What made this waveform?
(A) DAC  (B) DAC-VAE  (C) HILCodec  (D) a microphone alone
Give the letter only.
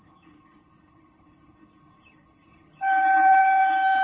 C